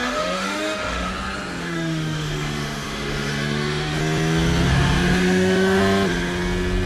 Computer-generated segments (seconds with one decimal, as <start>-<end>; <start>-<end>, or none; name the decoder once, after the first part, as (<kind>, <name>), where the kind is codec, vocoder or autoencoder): 0.0-1.1 (autoencoder, DAC-VAE); 1.6-4.0; 4.7-5.8